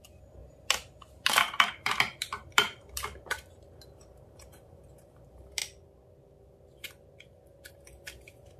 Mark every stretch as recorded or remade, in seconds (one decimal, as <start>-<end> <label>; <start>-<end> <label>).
0.0-0.4 remade; 0.4-1.1 recorded; 1.1-5.6 remade; 5.6-7.7 recorded; 7.7-8.6 remade